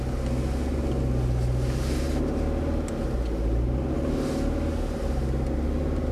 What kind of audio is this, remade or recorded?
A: recorded